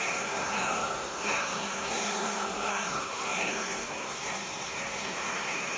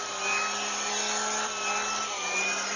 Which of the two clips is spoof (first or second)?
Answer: first